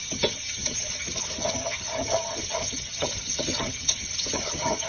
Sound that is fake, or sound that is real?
fake